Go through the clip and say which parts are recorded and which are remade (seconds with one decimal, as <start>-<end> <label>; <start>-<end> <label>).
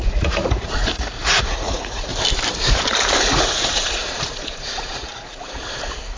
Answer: 0.0-2.1 remade; 2.1-3.2 recorded; 3.2-6.2 remade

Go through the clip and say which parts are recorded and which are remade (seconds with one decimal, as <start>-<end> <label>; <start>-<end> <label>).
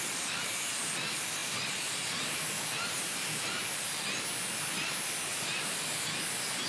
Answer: 0.0-1.4 recorded; 1.4-3.9 remade; 3.9-5.3 recorded; 5.3-5.9 remade; 5.9-6.7 recorded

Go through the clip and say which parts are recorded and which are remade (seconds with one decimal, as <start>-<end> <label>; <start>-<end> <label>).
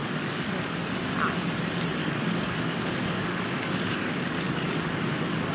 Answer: 0.0-0.8 remade; 0.8-2.0 recorded; 2.0-5.5 remade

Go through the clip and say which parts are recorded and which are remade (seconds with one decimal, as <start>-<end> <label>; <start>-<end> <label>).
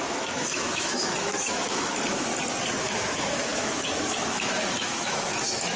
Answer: 0.0-2.3 remade; 2.3-2.8 recorded; 2.8-5.8 remade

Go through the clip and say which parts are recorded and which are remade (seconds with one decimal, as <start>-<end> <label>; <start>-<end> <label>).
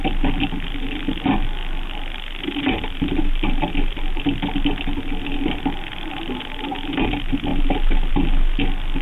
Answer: 0.0-9.0 recorded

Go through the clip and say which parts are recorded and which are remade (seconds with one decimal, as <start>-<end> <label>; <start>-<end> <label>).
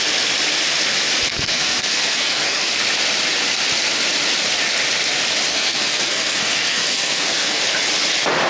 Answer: 0.0-1.3 recorded; 1.3-2.7 remade; 2.7-5.5 recorded; 5.5-7.6 remade; 7.6-8.5 recorded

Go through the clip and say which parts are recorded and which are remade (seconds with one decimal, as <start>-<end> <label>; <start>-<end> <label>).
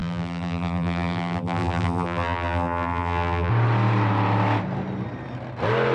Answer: 0.0-3.5 remade; 3.5-5.9 recorded